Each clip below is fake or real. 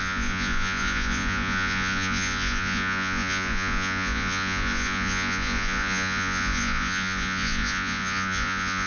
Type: fake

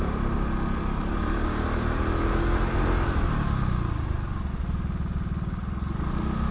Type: real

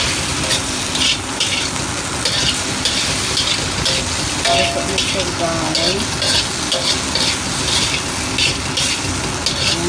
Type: real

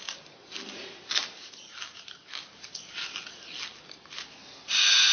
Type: real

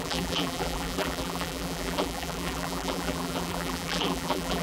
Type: fake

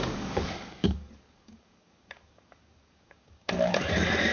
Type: fake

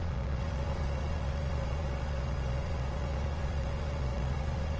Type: fake